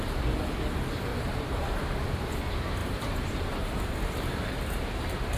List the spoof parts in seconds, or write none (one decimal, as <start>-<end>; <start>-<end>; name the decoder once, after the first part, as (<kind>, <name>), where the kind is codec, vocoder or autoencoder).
1.1-2.4 (vocoder, BigVGAN v2); 2.8-4.9